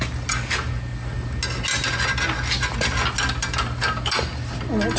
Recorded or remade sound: recorded